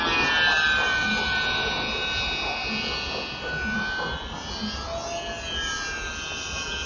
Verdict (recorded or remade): recorded